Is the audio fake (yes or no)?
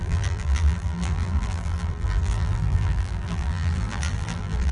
yes